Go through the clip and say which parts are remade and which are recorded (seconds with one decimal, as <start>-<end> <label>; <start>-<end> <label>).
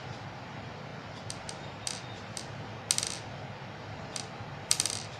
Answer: 0.0-0.9 remade; 0.9-4.0 recorded; 4.0-5.2 remade